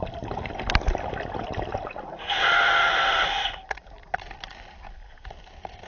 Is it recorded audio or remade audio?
recorded